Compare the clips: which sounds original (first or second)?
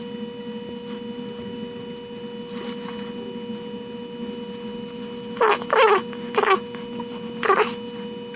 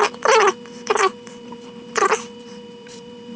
first